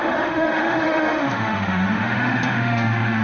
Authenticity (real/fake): fake